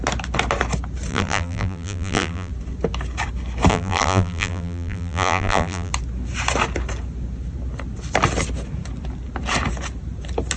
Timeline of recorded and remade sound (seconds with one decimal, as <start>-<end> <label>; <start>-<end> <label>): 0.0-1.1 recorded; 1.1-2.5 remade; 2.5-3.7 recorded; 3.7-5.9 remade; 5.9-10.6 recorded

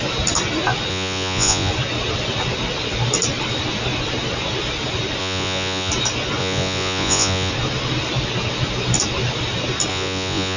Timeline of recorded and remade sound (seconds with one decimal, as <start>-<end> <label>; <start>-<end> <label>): 0.0-0.9 recorded; 0.9-1.7 remade; 1.7-5.2 recorded; 5.2-5.9 remade; 5.9-6.4 recorded; 6.4-7.5 remade; 7.5-9.9 recorded; 9.9-10.6 remade

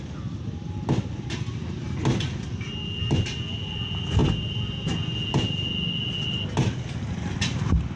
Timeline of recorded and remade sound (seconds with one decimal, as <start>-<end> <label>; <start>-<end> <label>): 0.0-8.0 recorded

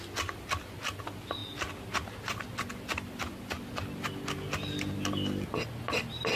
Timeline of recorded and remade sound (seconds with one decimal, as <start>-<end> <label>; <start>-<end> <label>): 0.0-6.4 recorded

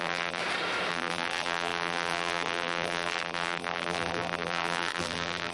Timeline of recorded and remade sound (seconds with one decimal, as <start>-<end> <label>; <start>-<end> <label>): 0.0-0.4 remade; 0.4-0.9 recorded; 0.9-5.5 remade

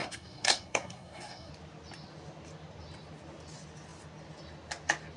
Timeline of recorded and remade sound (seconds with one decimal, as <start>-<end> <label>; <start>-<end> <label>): 0.0-1.5 remade; 1.5-5.2 recorded